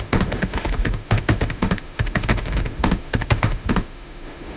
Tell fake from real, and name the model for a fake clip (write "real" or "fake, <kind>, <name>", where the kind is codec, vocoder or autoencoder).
fake, autoencoder, DAC-VAE